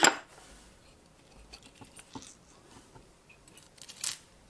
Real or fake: real